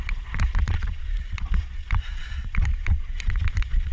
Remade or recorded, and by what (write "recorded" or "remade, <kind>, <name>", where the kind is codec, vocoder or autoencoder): remade, vocoder, Vocos